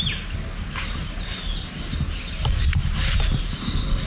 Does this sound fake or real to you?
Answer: real